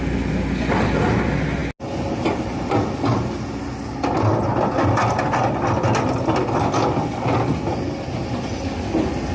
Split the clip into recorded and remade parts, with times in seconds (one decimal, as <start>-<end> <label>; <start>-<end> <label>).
0.0-9.3 recorded